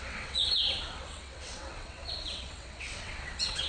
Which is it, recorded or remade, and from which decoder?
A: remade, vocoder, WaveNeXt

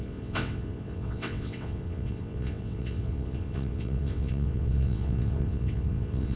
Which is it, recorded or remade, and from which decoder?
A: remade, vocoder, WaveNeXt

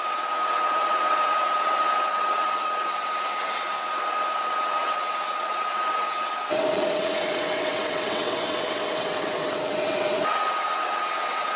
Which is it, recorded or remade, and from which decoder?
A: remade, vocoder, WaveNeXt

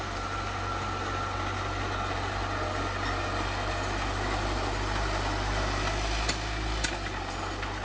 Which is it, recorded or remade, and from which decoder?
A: recorded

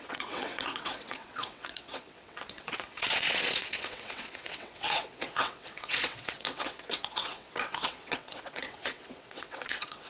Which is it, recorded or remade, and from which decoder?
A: remade, vocoder, WaveNeXt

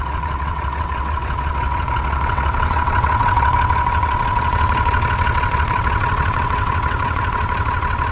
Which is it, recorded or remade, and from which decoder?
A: remade, vocoder, WaveNeXt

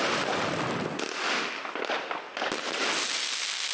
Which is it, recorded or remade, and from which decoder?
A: recorded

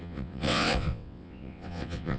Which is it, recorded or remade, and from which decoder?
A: remade, vocoder, WaveNeXt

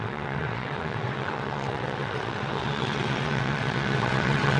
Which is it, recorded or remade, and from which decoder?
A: remade, vocoder, WaveNeXt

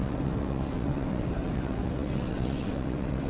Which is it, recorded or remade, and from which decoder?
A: remade, vocoder, WaveNeXt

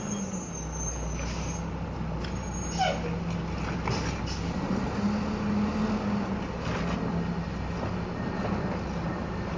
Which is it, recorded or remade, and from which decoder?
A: recorded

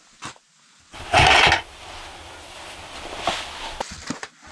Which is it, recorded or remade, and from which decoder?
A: recorded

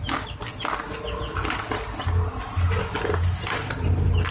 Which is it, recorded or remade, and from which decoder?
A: recorded